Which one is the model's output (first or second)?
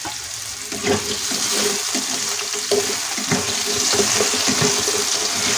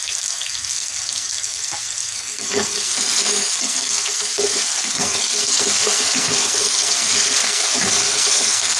second